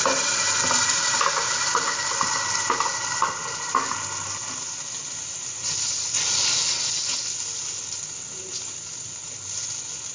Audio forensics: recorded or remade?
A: recorded